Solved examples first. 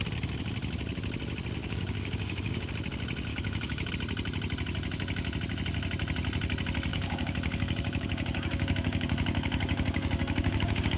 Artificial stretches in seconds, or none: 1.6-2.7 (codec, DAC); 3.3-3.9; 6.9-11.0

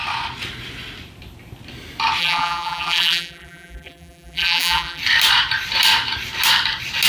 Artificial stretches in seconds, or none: 2.2-5.0 (vocoder, BigVGAN v2)